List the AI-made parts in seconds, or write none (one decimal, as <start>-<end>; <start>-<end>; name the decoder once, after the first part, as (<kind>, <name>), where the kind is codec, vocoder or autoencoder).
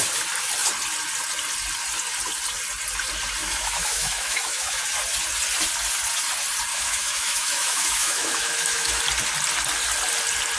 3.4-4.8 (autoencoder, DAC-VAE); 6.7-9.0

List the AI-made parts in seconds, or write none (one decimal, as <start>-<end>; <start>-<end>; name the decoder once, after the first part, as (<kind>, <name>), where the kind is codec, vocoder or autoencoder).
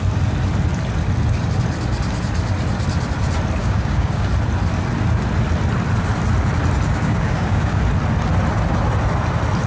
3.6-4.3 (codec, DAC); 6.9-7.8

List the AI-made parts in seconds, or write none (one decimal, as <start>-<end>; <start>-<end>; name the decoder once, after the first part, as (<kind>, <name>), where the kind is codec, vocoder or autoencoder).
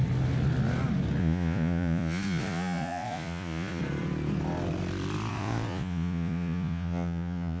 1.2-3.8 (vocoder, Vocos); 5.3-7.6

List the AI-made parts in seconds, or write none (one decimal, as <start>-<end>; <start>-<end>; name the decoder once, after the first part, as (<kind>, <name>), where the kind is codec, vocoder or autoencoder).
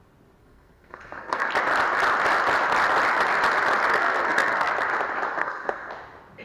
0.4-1.5 (codec, SNAC); 3.9-4.7; 5.4-5.9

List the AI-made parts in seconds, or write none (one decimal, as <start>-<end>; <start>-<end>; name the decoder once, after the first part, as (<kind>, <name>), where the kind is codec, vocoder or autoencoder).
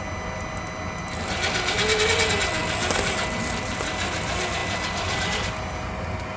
none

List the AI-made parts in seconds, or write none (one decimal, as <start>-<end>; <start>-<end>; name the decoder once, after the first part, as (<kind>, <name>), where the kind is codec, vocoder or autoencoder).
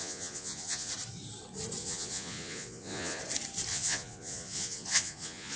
0.0-0.9 (vocoder, Vocos); 1.8-3.2; 3.7-5.6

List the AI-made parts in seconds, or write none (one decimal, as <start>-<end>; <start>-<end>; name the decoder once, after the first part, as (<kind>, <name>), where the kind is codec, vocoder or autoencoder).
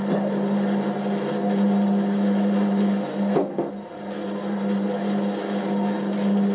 3.1-3.7 (codec, SNAC)